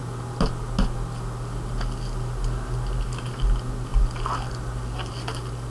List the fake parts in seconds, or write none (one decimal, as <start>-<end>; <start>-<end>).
none